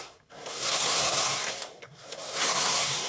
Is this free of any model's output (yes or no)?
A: no